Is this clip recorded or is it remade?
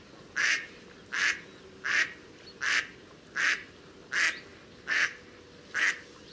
recorded